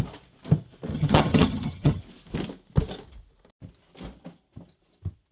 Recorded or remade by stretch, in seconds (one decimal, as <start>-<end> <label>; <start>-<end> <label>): 0.0-0.9 recorded; 0.9-2.0 remade; 2.0-5.3 recorded